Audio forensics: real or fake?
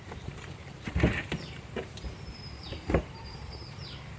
fake